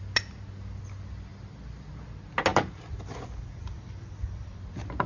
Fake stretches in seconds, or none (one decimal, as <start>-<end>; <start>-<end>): none